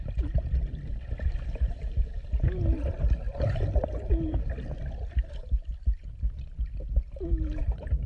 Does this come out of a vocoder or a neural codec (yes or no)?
no